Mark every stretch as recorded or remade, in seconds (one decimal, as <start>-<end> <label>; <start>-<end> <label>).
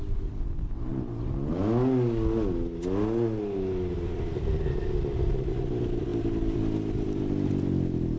0.0-8.2 recorded